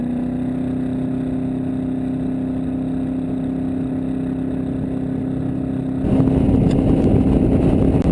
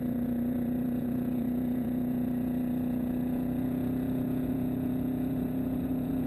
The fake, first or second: second